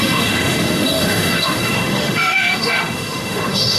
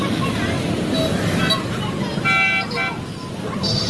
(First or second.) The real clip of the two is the second